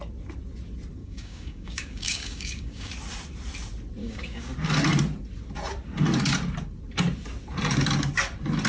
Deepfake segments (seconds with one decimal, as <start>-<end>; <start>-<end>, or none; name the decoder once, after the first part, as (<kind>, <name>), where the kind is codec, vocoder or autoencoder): 1.0-2.9 (codec, DAC); 4.0-4.5